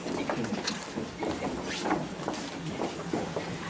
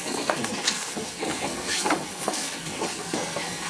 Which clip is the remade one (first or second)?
second